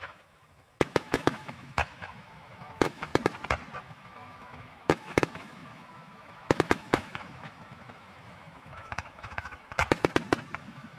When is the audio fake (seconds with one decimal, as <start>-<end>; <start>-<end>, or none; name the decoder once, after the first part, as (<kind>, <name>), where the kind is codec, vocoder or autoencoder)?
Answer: 0.0-3.1 (autoencoder, DAC-VAE); 3.8-9.8; 10.6-11.0